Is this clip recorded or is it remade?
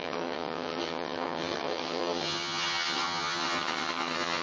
remade